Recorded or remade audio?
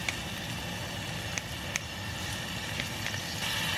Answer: recorded